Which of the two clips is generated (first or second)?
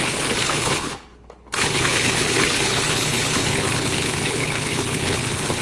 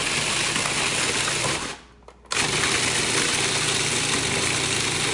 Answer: first